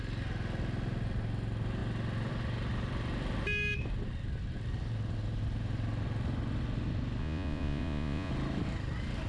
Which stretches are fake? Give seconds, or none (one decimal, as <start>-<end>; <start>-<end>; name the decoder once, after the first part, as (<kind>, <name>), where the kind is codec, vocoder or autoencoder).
7.2-8.3 (vocoder, Vocos)